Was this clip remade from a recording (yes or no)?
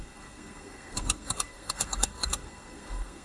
yes